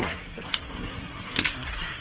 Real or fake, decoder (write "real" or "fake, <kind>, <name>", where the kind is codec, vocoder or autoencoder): fake, codec, SNAC